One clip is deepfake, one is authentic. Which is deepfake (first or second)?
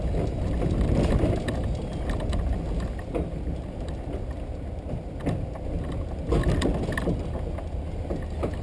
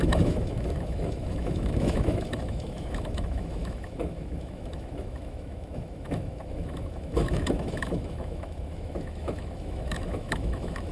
second